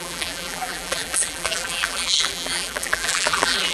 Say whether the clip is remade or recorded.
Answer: remade